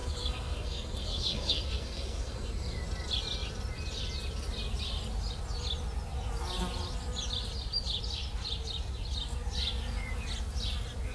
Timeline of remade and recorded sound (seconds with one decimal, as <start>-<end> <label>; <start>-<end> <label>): 0.0-2.5 remade; 2.5-11.1 recorded